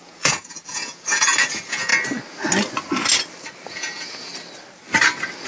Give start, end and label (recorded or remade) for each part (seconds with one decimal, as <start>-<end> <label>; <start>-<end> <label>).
0.0-1.9 remade; 1.9-3.7 recorded; 3.7-4.3 remade; 4.3-5.5 recorded